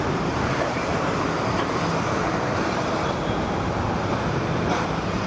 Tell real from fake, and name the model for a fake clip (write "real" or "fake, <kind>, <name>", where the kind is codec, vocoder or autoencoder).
fake, vocoder, BigVGAN v2